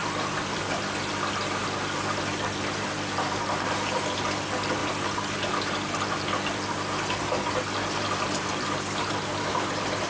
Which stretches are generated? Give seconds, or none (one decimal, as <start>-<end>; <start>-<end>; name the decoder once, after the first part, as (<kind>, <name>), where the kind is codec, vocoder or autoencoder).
4.8-5.5 (vocoder, BigVGAN v2)